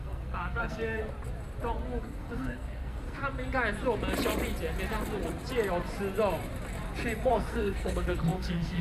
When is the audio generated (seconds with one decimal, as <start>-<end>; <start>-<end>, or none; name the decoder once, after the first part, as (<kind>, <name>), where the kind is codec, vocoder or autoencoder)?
0.0-1.0 (codec, SNAC); 2.0-3.2; 7.3-8.8